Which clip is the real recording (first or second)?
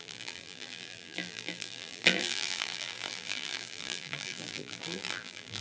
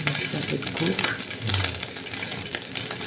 second